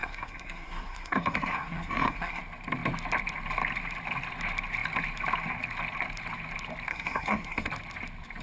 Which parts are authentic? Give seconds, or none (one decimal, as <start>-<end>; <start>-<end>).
2.4-6.9; 7.7-8.4